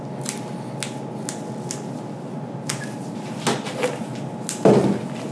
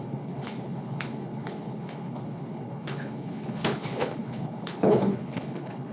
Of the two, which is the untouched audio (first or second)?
first